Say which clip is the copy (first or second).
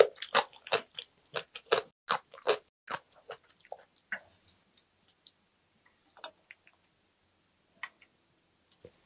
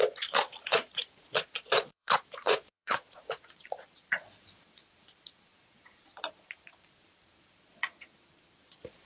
second